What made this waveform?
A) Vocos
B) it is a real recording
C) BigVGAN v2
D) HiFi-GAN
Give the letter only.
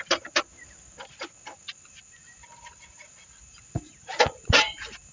C